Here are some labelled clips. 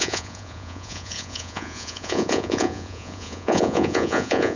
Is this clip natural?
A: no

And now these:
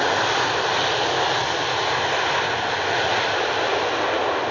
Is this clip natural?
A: yes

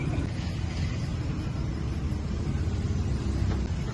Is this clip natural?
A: yes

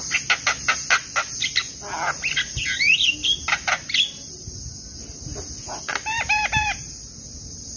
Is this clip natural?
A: yes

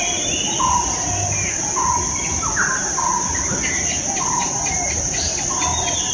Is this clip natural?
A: yes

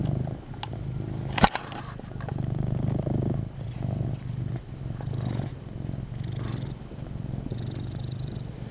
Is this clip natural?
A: yes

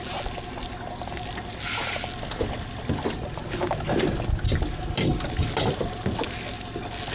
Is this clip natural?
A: yes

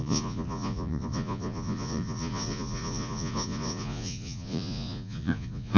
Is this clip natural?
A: no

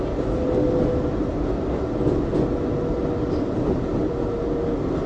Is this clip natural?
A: yes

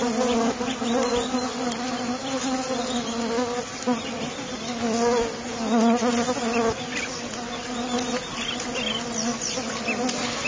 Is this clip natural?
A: yes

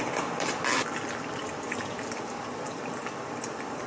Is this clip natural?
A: yes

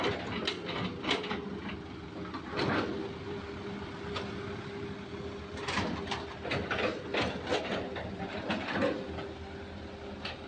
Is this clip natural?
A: yes